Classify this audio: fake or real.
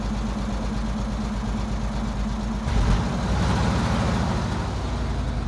real